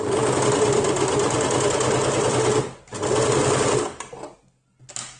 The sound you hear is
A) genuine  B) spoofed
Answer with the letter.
A